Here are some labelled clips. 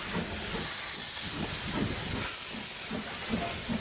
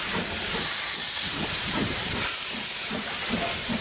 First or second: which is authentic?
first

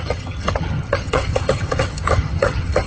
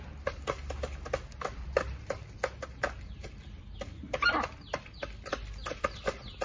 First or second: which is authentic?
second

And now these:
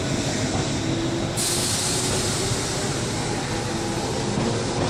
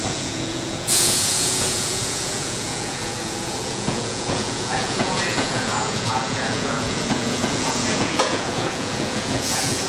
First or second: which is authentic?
first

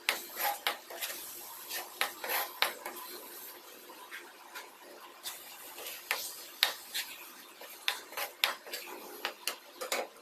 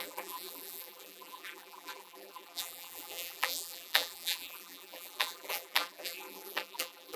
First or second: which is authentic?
first